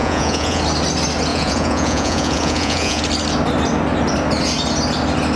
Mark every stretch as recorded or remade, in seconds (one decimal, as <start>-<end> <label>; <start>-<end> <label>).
0.0-0.6 remade; 0.6-1.3 recorded; 1.3-3.0 remade; 3.0-5.4 recorded